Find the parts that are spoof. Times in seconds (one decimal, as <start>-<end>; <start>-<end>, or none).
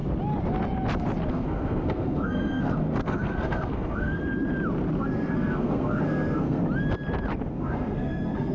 1.3-4.2; 5.0-6.6; 7.5-8.5